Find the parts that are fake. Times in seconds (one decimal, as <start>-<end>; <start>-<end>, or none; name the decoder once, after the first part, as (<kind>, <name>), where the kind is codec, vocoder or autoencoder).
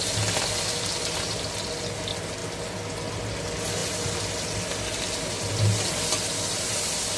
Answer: none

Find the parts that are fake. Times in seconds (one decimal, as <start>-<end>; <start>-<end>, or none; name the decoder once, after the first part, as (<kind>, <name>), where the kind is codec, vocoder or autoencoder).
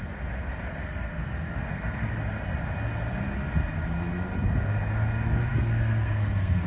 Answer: 0.8-2.1 (codec, SNAC); 5.5-6.7